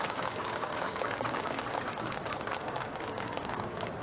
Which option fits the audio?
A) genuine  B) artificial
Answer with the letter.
B